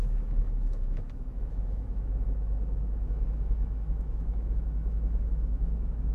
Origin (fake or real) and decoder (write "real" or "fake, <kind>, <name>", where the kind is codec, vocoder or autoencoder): fake, autoencoder, DAC-VAE